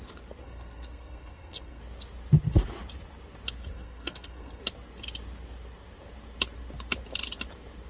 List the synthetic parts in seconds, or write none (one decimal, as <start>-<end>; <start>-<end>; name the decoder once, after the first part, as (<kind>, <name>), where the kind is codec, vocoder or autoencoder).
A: 0.4-1.8 (codec, SNAC); 3.7-4.6